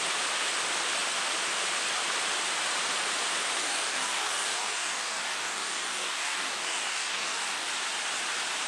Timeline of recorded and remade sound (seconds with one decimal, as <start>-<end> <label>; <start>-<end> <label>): 0.0-3.6 recorded; 3.6-7.7 remade; 7.7-8.7 recorded